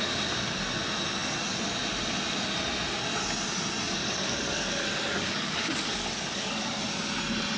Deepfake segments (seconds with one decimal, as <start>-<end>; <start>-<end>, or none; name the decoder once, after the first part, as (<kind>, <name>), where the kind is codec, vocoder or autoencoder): 4.0-6.8 (codec, DAC)